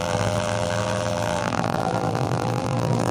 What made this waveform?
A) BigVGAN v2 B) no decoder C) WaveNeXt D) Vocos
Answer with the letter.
A